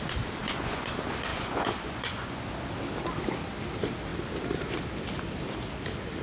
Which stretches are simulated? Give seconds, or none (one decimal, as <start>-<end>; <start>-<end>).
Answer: 0.4-0.9; 1.3-2.4